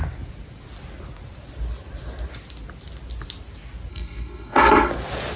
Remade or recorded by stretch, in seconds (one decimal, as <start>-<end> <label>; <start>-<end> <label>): 0.0-3.9 recorded; 3.9-4.9 remade; 4.9-5.4 recorded